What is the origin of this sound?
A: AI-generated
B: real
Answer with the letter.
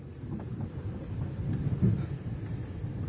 A